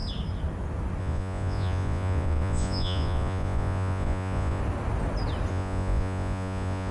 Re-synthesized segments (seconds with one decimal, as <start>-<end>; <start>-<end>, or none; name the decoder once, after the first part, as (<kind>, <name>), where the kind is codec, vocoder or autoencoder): 1.0-4.6 (vocoder, Vocos); 5.5-6.9